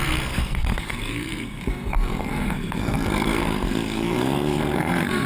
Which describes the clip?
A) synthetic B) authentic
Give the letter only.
A